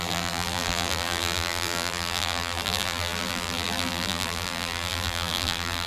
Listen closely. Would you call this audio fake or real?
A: fake